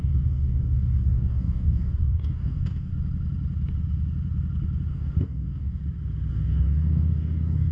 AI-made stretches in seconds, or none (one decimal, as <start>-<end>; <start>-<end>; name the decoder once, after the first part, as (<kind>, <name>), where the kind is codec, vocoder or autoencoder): 0.0-2.9 (codec, DAC); 4.9-5.8; 6.3-7.7